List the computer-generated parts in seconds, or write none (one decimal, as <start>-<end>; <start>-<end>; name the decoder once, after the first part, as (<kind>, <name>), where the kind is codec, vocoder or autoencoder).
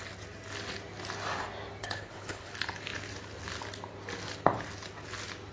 1.8-2.5 (codec, HILCodec)